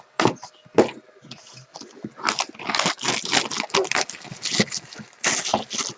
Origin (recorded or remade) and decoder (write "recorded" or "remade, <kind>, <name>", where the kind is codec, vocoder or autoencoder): recorded